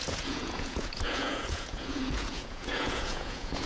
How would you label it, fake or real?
fake